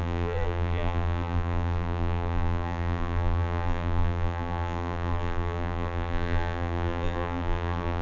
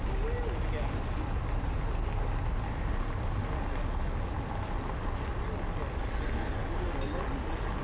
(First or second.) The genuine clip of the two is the second